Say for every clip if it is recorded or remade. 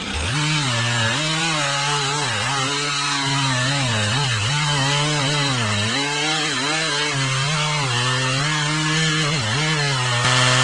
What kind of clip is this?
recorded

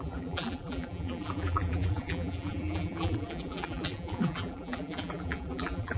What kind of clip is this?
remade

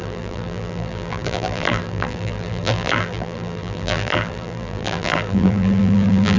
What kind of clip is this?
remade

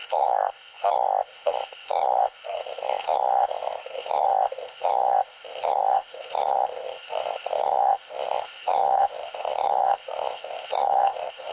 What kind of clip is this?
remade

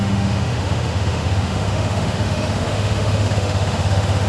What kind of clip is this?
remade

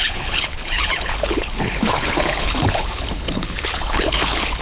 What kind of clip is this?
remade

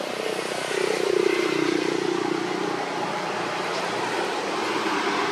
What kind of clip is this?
remade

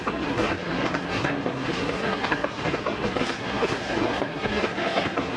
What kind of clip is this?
remade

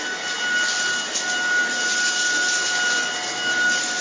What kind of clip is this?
recorded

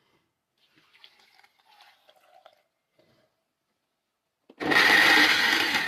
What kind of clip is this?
recorded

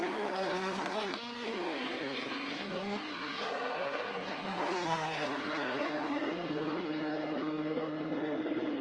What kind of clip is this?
remade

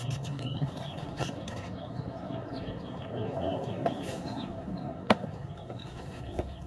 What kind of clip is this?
remade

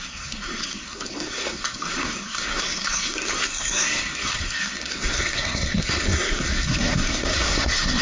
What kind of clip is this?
remade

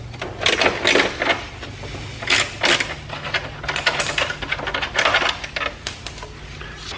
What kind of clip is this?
recorded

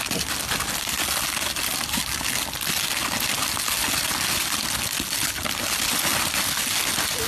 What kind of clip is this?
recorded